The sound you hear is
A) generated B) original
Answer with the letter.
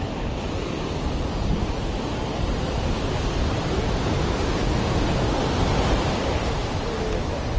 B